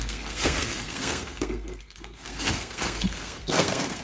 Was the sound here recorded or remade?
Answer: remade